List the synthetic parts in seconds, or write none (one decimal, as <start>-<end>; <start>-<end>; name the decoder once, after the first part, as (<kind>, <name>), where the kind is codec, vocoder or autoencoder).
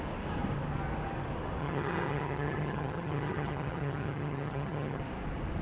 1.6-5.0 (vocoder, HiFi-GAN)